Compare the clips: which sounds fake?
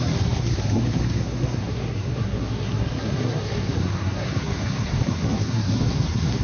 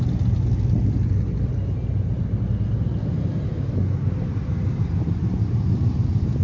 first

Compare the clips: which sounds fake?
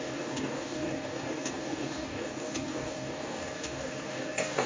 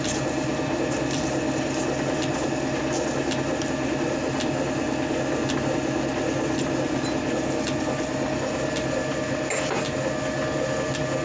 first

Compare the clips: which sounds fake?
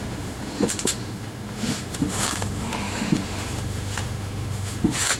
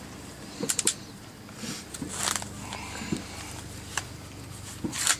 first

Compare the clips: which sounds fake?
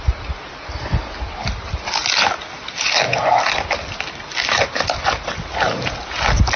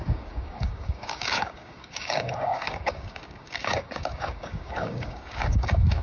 second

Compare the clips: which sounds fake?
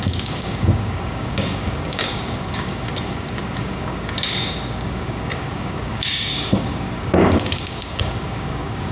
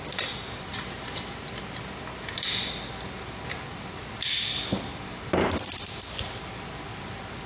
first